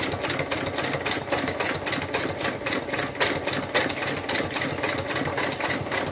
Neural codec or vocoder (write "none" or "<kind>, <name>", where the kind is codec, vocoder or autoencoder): none